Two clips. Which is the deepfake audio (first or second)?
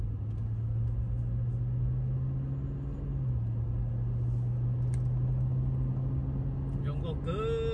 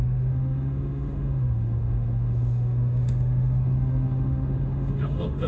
second